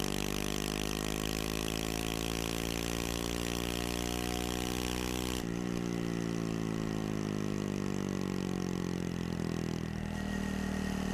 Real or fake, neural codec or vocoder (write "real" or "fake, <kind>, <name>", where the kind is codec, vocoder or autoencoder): real